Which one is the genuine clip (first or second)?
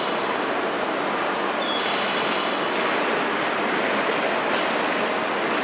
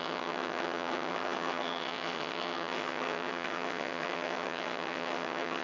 first